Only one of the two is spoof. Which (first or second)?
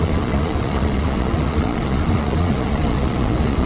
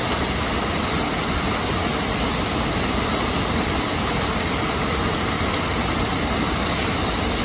first